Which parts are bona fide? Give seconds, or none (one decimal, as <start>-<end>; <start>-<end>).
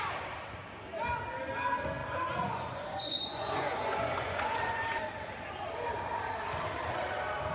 0.0-2.0; 4.8-7.5